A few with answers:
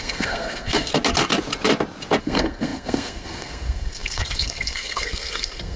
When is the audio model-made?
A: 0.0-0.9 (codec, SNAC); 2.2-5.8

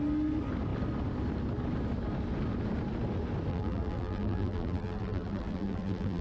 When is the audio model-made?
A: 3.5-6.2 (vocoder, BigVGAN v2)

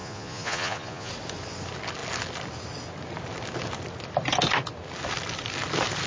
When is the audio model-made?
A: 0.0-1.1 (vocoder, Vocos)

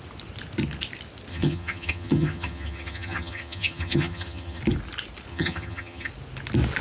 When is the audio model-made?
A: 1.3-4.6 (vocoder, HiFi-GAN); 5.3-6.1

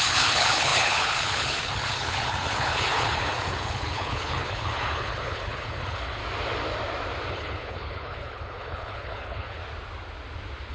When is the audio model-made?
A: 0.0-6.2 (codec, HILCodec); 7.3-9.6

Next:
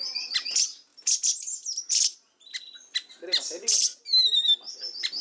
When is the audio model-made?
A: none

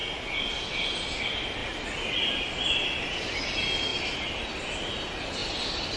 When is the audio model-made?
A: none

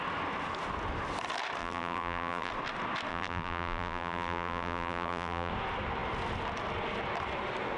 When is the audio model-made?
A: 1.6-2.5 (vocoder, BigVGAN v2); 3.1-5.5